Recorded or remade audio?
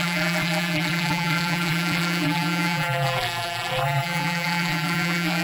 remade